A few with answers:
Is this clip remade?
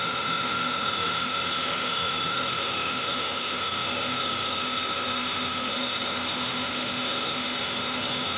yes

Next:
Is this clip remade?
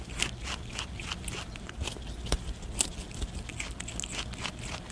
no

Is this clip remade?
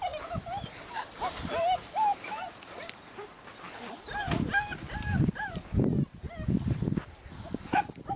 no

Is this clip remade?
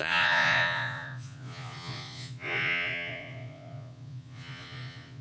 yes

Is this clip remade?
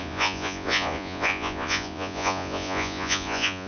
yes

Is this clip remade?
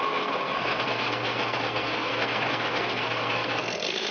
yes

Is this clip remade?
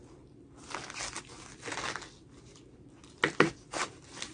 no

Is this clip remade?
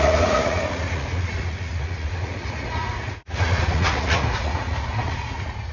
yes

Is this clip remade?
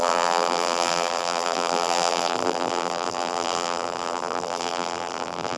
yes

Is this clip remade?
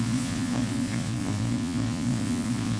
yes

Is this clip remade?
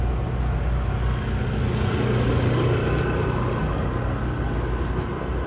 no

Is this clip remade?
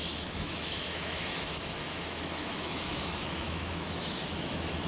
yes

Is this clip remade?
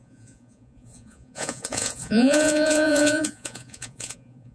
yes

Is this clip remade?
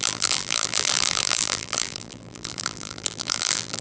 yes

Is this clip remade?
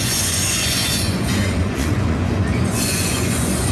yes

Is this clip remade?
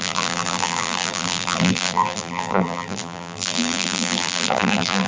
yes